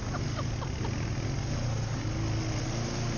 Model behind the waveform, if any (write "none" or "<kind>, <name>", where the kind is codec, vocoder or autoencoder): none